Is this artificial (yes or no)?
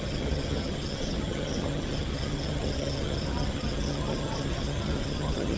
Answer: yes